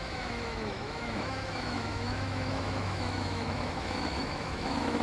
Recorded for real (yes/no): no